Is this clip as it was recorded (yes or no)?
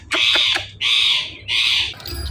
yes